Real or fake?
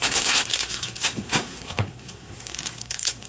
fake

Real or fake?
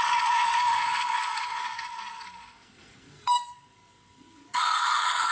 fake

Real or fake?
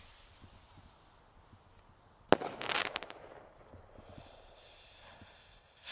real